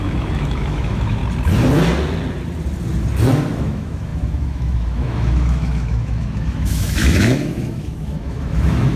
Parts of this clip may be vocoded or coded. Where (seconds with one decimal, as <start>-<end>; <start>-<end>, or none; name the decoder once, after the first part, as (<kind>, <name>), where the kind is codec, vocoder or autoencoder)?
0.0-1.2 (autoencoder, DAC-VAE); 3.6-9.0